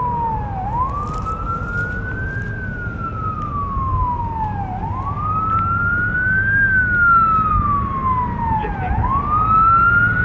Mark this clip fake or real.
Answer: real